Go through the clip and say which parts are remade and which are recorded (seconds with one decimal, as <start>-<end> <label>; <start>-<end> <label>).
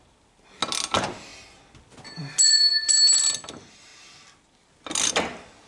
0.0-5.7 recorded